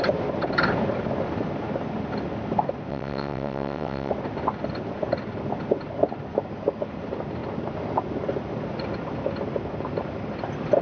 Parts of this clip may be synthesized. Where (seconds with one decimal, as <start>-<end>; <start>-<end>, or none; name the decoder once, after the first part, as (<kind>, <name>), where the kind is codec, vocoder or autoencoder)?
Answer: 2.9-4.1 (vocoder, WaveNeXt)